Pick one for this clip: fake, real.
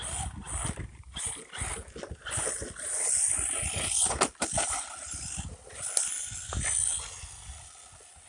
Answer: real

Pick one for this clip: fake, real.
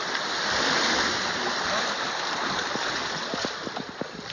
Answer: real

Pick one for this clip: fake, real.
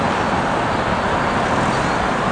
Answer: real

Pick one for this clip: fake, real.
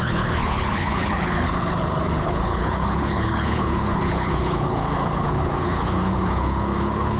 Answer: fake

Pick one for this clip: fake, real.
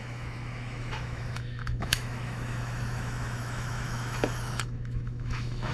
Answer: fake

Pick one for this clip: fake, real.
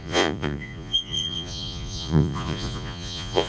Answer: fake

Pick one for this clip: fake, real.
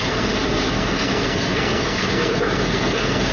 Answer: fake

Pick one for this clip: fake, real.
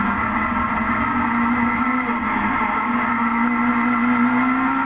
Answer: real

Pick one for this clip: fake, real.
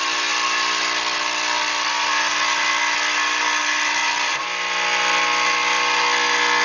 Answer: real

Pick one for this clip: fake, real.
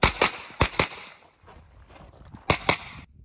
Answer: real